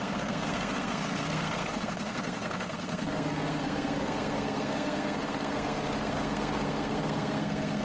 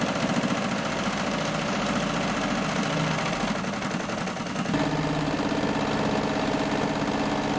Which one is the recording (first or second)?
second